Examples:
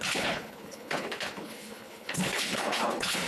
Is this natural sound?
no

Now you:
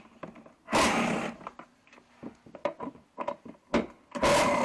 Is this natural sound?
yes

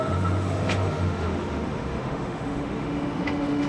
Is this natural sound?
no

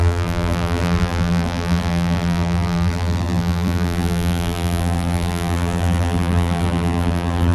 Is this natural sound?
no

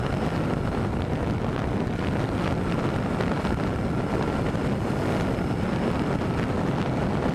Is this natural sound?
yes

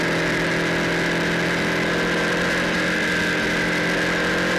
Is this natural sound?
yes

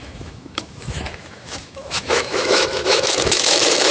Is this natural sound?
no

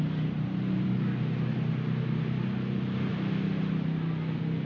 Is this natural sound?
yes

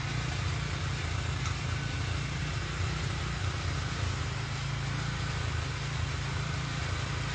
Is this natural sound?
no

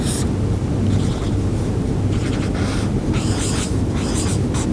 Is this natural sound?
yes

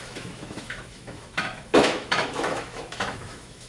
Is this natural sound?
no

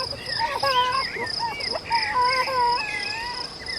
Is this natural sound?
no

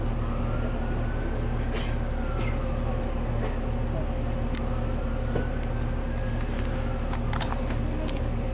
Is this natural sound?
yes